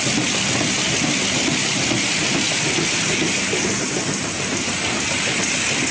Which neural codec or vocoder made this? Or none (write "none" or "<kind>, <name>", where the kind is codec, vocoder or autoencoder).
none